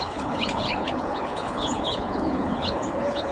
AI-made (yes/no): yes